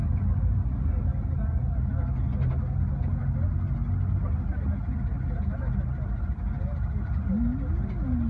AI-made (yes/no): no